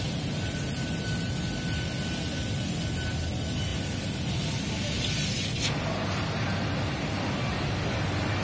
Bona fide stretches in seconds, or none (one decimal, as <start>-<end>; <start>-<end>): 0.0-8.4